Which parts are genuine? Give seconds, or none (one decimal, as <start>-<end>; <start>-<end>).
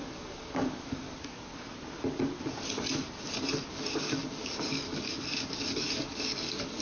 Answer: 1.5-3.7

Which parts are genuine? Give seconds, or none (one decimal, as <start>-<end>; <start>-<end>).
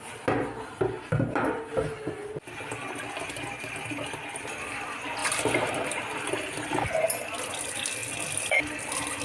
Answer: 0.0-9.2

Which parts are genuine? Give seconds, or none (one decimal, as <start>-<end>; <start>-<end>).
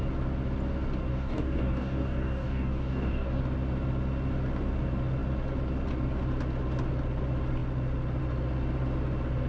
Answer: 0.0-1.1; 3.4-9.5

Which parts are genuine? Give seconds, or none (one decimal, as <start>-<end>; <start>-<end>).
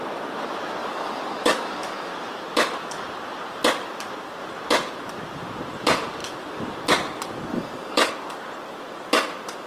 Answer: 0.0-0.8; 2.1-7.5; 8.1-9.7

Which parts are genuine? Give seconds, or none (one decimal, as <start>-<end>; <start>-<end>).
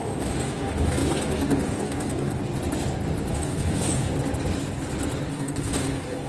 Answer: 2.4-3.3; 4.1-5.3